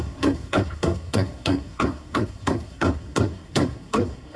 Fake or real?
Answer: fake